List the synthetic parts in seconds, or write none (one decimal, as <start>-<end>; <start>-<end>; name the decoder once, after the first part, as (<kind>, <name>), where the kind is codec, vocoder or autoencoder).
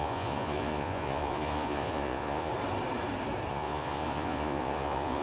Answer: 0.0-2.5 (vocoder, Vocos); 3.5-5.2